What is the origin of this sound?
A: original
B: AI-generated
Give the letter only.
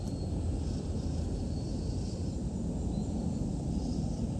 A